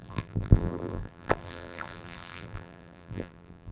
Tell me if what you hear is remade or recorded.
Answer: remade